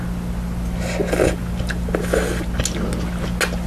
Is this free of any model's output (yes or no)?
yes